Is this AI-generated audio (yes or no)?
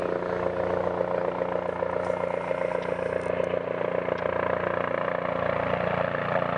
no